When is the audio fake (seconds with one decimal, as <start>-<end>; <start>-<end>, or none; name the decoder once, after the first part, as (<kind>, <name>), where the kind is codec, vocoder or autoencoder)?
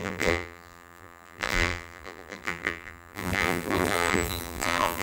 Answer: 0.0-5.0 (vocoder, BigVGAN v2)